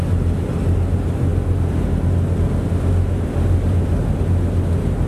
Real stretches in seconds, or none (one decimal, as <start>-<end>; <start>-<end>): 0.0-5.1

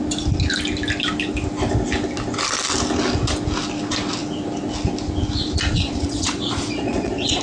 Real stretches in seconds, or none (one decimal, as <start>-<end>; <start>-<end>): 0.0-5.7

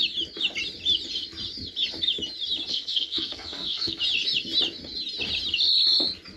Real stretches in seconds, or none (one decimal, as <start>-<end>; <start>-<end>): 0.0-2.7; 4.0-6.4

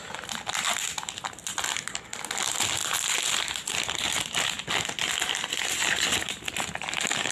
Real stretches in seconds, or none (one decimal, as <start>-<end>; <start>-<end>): 0.0-7.3

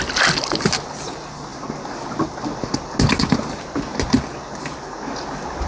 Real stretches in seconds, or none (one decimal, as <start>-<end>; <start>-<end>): 0.0-5.7

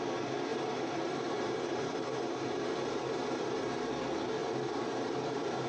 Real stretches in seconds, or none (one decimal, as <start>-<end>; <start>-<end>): 0.0-0.5; 3.9-4.4

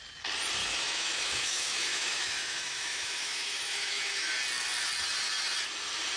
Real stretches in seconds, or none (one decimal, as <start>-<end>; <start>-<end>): 0.0-0.6; 4.3-6.2

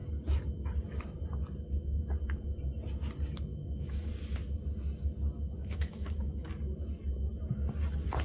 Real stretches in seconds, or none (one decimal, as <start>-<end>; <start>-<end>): 0.0-3.5; 4.1-5.6; 6.5-8.2